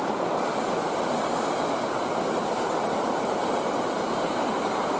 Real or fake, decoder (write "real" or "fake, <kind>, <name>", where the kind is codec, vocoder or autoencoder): real